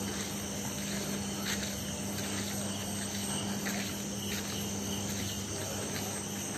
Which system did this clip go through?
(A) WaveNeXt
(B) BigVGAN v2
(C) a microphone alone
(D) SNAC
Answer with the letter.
C